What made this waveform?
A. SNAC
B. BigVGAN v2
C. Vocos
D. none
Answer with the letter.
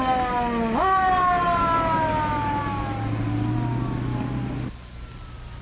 D